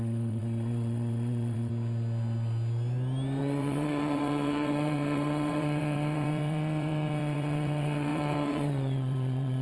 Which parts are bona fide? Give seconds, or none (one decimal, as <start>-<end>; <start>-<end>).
1.7-3.4